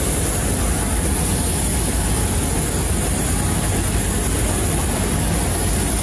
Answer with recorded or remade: recorded